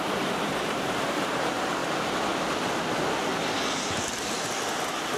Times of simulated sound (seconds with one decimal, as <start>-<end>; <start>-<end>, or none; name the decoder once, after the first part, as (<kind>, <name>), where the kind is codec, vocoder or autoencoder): 0.0-1.8 (vocoder, BigVGAN v2); 4.8-5.2